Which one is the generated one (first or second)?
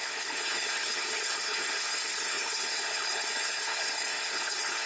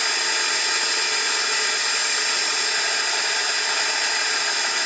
first